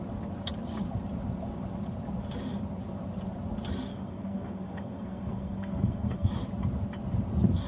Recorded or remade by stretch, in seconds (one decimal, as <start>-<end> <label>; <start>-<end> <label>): 0.0-3.9 recorded; 3.9-6.3 remade; 6.3-7.7 recorded